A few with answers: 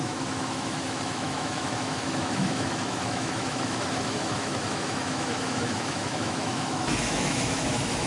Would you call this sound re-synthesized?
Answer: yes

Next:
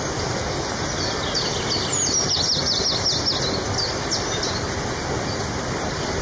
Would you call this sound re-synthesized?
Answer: no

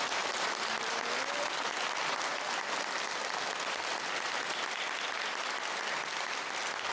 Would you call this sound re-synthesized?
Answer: no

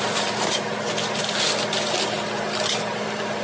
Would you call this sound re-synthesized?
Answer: no